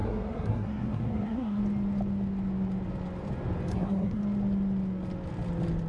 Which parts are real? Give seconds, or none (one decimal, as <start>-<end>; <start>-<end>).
1.6-3.7; 4.2-5.9

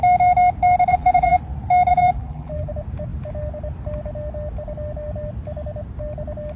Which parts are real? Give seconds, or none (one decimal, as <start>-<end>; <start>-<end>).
0.0-0.9; 1.4-1.9; 2.7-6.6

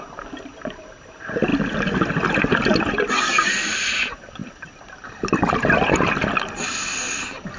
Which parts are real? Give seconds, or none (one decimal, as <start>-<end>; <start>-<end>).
0.0-7.6

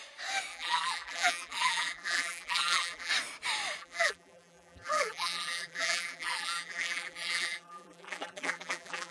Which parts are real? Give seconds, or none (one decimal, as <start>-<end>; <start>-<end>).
0.0-0.5; 3.1-3.8

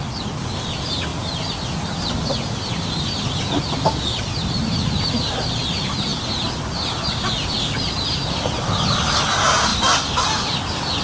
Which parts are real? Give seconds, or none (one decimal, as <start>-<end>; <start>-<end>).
0.0-11.0